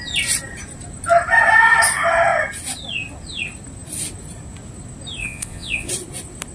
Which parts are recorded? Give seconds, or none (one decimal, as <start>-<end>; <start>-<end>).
0.0-5.2; 5.9-6.5